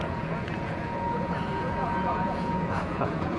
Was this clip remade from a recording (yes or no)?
yes